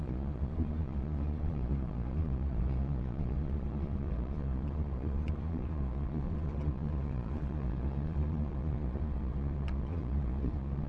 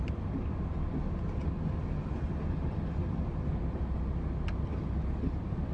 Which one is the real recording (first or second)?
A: second